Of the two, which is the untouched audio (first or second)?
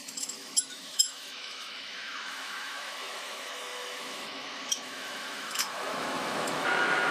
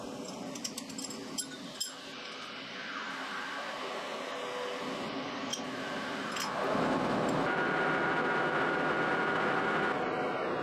second